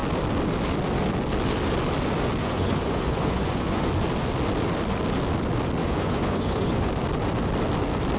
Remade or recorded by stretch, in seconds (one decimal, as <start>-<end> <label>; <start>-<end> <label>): 0.0-2.4 recorded; 2.4-3.9 remade; 3.9-5.8 recorded; 5.8-6.9 remade; 6.9-8.2 recorded